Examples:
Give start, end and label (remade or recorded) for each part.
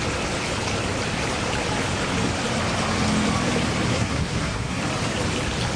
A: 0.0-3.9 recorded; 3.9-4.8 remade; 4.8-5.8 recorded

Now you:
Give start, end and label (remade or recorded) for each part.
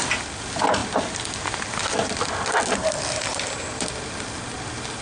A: 0.0-5.0 recorded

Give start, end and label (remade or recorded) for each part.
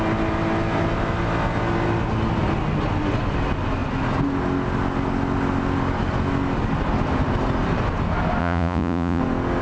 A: 0.0-8.4 recorded; 8.4-9.2 remade; 9.2-9.6 recorded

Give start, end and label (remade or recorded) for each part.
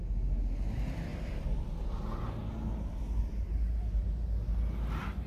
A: 0.0-1.1 recorded; 1.1-1.9 remade; 1.9-5.3 recorded